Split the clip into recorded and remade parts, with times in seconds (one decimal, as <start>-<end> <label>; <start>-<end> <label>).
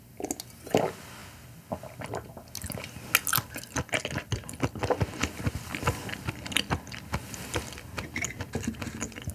0.0-9.3 recorded